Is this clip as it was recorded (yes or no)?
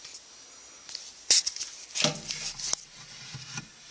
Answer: yes